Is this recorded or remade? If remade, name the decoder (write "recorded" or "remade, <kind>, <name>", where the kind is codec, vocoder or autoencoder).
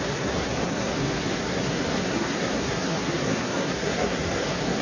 remade, codec, SNAC